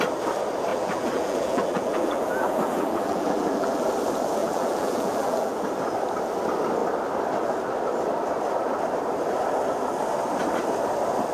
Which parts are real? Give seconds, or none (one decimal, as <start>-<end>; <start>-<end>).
0.0-0.7; 3.9-4.4; 5.6-11.3